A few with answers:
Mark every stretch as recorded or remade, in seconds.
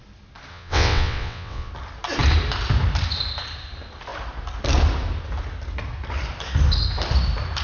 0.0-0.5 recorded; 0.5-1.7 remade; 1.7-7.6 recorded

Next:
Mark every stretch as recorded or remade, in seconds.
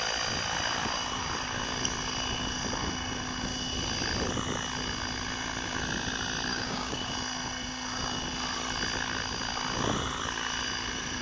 0.0-6.5 recorded; 6.5-7.1 remade; 7.1-11.2 recorded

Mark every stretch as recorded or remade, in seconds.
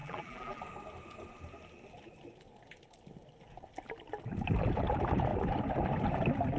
0.0-0.6 remade; 0.6-6.6 recorded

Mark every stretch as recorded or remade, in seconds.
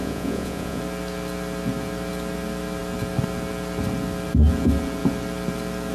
0.0-0.8 remade; 0.8-5.9 recorded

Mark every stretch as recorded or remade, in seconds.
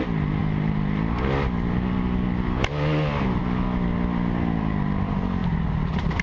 0.0-6.2 recorded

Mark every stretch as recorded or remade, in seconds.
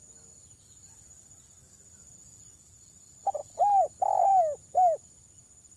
0.0-3.4 recorded; 3.4-3.9 remade; 3.9-5.8 recorded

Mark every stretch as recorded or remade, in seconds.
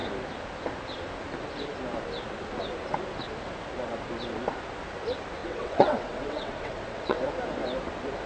0.0-5.4 recorded; 5.4-7.2 remade; 7.2-8.3 recorded